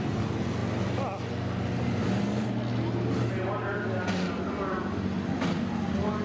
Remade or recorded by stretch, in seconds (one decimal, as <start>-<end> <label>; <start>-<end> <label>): 0.0-6.2 recorded